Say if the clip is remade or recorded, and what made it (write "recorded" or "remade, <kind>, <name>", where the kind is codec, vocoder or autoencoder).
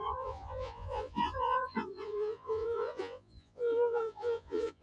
remade, vocoder, Vocos